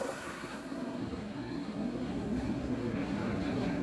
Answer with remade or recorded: remade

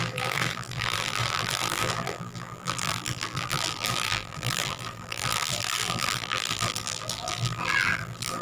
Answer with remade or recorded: remade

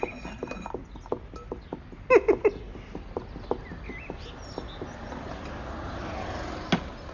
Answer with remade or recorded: recorded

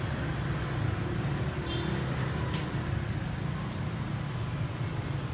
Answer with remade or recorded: recorded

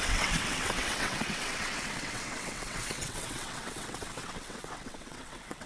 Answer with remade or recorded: remade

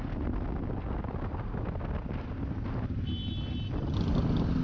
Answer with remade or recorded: recorded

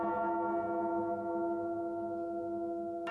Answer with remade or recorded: recorded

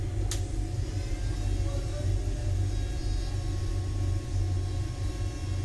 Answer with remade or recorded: recorded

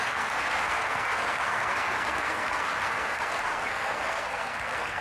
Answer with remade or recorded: remade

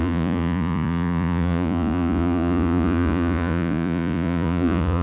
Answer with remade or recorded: remade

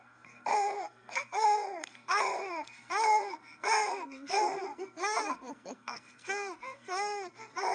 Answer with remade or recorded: remade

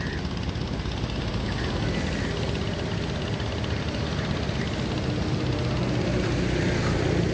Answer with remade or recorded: recorded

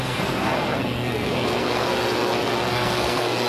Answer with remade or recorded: remade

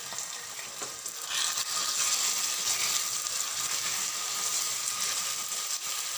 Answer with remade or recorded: recorded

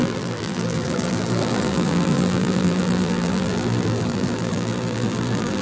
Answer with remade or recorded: remade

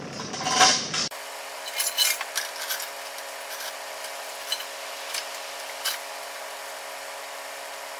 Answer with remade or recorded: remade